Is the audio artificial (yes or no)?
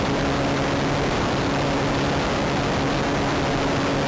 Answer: no